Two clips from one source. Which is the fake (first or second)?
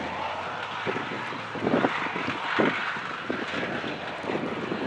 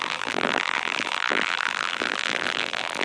second